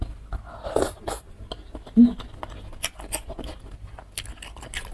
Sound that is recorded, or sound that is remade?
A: recorded